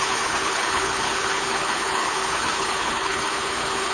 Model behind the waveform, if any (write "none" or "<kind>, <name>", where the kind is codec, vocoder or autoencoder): codec, HILCodec